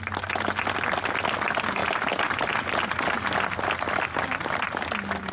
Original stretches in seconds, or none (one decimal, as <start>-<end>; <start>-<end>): 0.0-5.3